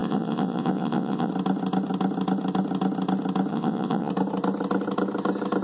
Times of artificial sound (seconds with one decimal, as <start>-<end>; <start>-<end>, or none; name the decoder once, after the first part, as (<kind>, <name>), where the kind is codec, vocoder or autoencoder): 0.0-1.3 (vocoder, WaveNeXt); 3.5-4.1

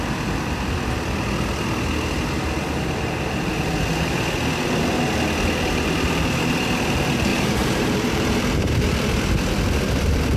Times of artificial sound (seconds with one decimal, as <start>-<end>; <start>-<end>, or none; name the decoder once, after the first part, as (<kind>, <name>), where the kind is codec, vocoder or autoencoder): 7.3-8.8 (vocoder, BigVGAN v2)

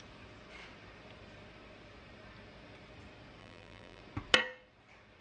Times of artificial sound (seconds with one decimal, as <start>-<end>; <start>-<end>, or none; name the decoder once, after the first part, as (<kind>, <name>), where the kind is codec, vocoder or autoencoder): 3.4-4.0 (vocoder, BigVGAN v2)

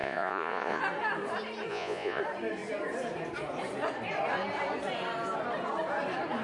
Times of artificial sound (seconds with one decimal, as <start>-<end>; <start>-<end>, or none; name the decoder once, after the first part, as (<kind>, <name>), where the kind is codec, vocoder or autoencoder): 0.0-0.8 (vocoder, Vocos); 1.7-2.2